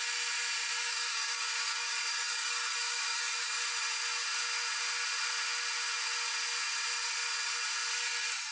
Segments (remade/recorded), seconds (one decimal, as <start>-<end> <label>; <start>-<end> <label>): 0.0-0.8 recorded; 0.8-3.5 remade; 3.5-8.5 recorded